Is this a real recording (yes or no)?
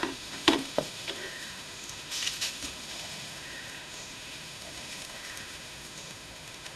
no